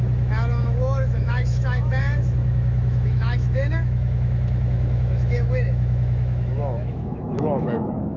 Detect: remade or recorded remade